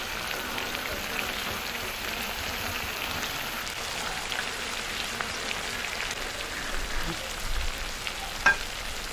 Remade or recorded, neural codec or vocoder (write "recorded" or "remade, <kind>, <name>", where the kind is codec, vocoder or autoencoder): recorded